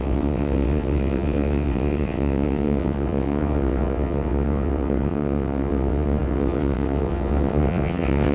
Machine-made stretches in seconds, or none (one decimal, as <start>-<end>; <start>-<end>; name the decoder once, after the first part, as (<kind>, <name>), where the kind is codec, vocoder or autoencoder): 0.0-8.3 (vocoder, WaveNeXt)